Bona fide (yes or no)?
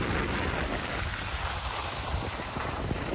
yes